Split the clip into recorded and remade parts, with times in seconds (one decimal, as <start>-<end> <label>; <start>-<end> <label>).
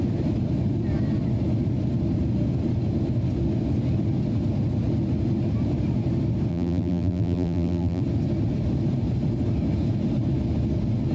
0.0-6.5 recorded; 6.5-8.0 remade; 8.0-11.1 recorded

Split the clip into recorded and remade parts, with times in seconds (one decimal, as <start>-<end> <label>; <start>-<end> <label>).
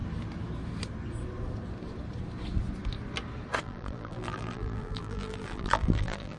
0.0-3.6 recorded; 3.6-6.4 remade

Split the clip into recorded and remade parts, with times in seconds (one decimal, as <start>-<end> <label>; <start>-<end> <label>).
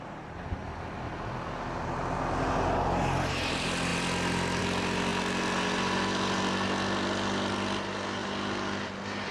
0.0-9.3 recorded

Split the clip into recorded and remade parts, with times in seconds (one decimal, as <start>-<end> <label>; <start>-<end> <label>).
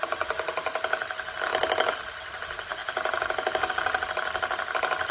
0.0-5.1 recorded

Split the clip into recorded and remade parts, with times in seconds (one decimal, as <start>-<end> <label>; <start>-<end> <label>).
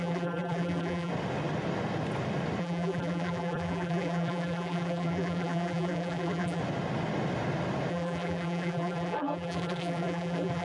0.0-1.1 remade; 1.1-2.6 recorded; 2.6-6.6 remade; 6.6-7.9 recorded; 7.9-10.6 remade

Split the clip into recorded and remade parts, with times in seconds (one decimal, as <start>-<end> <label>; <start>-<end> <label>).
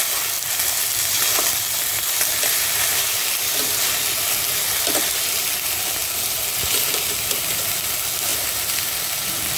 0.0-2.9 recorded; 2.9-3.5 remade; 3.5-9.6 recorded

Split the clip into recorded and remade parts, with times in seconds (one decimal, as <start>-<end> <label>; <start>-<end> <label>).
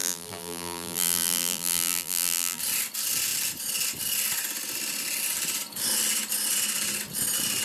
0.0-2.6 remade; 2.6-7.6 recorded